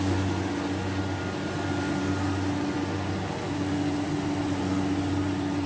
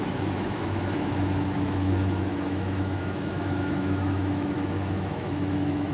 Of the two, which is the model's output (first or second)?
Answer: second